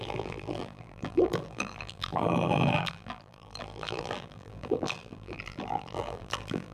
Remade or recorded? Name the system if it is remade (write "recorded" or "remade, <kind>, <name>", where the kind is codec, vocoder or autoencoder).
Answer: remade, vocoder, BigVGAN v2